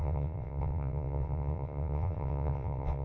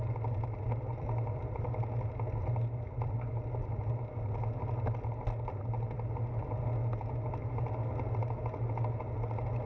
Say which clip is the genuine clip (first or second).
second